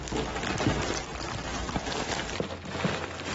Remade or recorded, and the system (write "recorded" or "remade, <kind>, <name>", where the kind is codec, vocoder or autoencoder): recorded